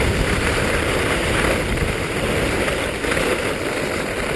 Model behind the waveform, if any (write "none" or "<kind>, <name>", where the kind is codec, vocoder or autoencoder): none